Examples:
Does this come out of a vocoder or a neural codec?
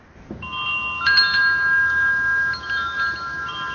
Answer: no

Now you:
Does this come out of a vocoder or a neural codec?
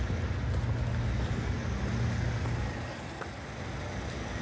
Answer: no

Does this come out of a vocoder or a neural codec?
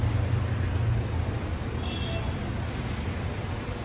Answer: no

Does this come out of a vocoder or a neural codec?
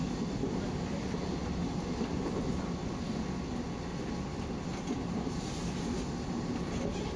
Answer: no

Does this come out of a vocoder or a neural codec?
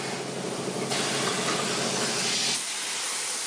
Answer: no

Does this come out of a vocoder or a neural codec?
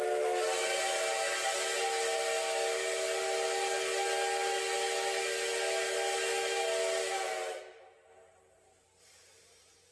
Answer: no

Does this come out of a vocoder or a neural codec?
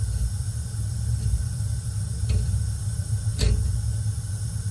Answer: no